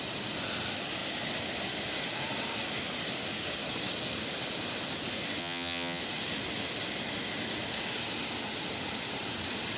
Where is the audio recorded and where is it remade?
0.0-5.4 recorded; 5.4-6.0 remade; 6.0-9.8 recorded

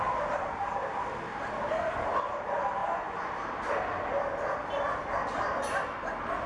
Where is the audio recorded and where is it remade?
0.0-2.8 recorded; 2.8-3.3 remade; 3.3-6.5 recorded